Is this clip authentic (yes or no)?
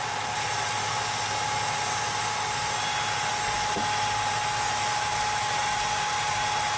yes